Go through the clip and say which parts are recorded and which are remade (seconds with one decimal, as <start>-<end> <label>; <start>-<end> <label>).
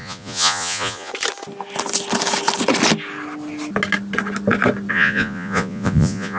0.0-1.1 remade; 1.1-4.9 recorded; 4.9-6.4 remade